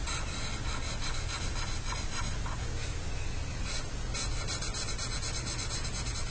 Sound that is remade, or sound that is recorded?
recorded